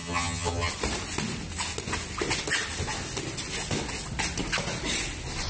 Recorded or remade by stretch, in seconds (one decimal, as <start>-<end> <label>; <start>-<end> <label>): 0.0-0.7 remade; 0.7-5.5 recorded